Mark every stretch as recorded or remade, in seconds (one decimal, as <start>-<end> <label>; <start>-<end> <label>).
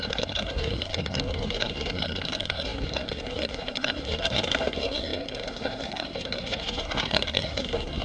0.0-8.0 remade